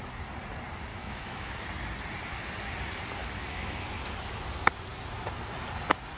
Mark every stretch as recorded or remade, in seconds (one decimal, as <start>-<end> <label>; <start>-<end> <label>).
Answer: 0.0-0.9 recorded; 0.9-1.5 remade; 1.5-3.2 recorded; 3.2-3.8 remade; 3.8-6.2 recorded